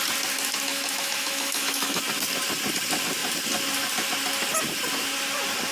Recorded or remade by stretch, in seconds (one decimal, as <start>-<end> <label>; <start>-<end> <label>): 0.0-0.7 recorded; 0.7-2.0 remade; 2.0-5.7 recorded